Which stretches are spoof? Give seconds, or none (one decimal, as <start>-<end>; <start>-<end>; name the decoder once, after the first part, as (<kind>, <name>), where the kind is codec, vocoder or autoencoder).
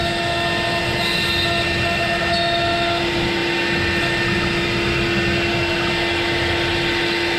none